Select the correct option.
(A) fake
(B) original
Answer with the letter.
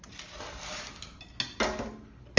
B